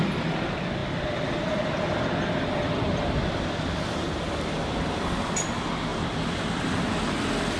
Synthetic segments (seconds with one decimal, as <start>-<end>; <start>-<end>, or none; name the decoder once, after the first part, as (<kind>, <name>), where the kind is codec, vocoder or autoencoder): 0.8-3.5 (vocoder, BigVGAN v2); 5.9-6.6